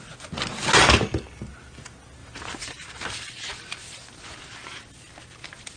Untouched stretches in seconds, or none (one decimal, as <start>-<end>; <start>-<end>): 0.0-5.8